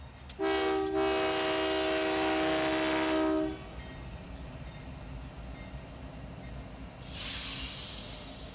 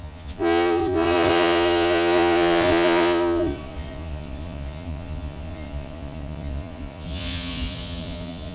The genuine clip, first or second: first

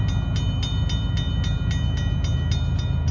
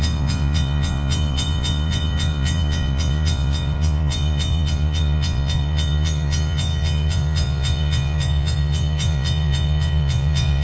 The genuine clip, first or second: first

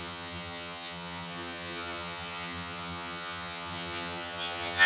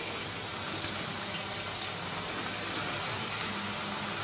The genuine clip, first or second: second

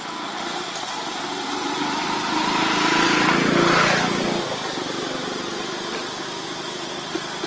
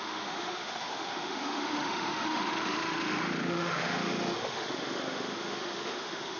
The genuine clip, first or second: first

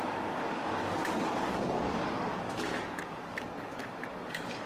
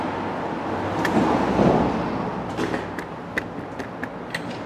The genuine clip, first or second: second